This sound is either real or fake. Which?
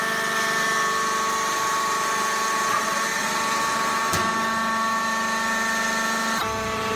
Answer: real